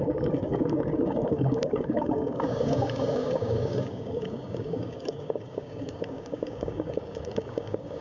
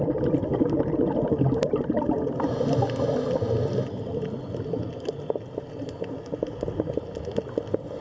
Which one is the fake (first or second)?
first